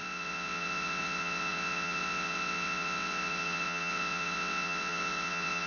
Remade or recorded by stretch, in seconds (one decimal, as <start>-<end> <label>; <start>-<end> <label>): 0.0-5.7 remade